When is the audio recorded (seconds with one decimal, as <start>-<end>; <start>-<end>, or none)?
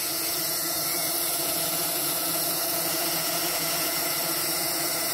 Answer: none